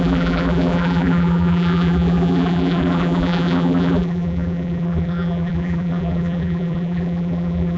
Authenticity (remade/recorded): remade